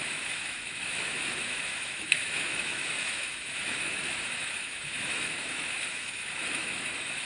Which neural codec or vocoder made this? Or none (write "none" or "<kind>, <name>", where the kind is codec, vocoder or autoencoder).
autoencoder, DAC-VAE